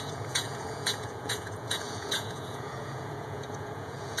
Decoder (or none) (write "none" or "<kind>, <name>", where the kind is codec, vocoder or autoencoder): vocoder, Vocos